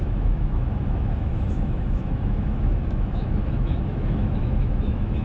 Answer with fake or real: fake